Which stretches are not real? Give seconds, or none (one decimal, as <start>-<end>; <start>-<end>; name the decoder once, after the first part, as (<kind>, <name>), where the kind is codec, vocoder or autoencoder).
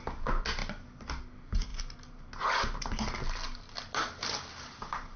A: none